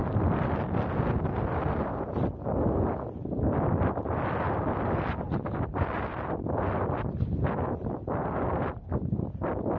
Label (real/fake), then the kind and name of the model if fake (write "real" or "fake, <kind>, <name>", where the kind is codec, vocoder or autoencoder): real